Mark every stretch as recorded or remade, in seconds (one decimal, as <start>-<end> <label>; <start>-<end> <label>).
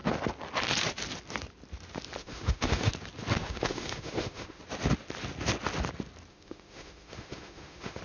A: 0.0-2.2 recorded; 2.2-2.9 remade; 2.9-3.4 recorded; 3.4-4.6 remade; 4.6-6.3 recorded; 6.3-8.0 remade